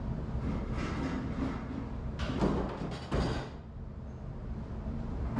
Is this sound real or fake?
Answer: real